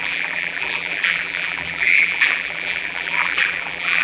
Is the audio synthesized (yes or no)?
yes